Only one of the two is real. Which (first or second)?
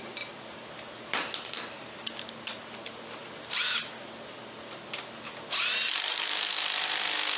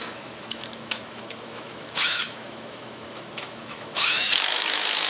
first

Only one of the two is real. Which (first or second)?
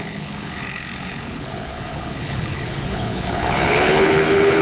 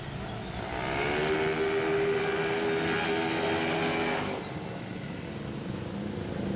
second